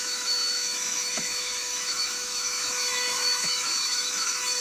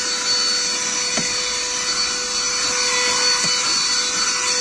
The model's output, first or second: first